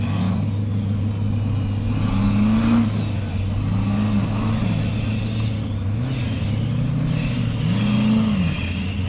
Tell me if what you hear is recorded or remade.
recorded